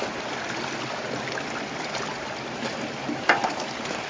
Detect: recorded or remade recorded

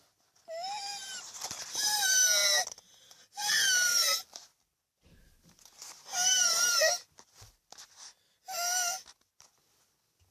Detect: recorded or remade recorded